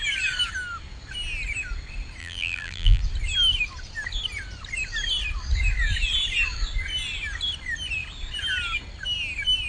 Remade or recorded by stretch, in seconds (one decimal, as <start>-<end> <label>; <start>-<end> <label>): 0.0-2.2 recorded; 2.2-3.0 remade; 3.0-9.7 recorded